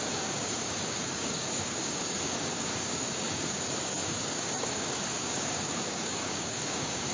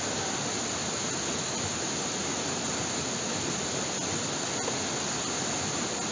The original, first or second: second